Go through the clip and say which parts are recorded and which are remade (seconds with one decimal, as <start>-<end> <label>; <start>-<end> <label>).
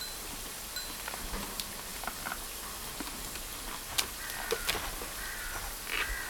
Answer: 0.0-6.3 recorded